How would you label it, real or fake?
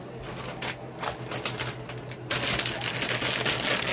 real